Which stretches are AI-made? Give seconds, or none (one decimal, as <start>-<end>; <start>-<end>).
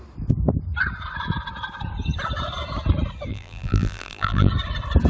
3.3-4.5